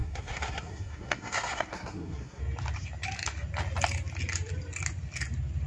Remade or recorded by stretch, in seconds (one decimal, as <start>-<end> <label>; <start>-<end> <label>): 0.0-2.4 remade; 2.4-5.7 recorded